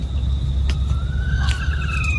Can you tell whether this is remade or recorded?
recorded